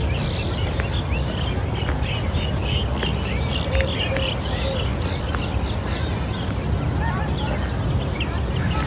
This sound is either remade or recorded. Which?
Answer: recorded